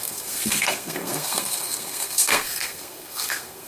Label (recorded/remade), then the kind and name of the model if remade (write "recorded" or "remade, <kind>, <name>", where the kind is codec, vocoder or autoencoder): remade, codec, SNAC